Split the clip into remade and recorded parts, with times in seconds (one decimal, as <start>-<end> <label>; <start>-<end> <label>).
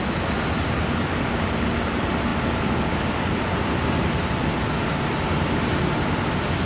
0.0-6.7 recorded